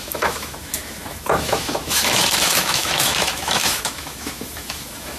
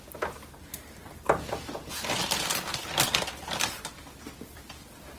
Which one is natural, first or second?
second